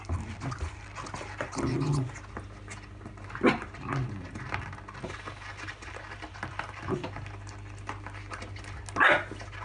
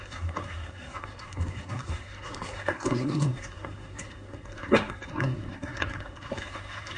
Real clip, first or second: first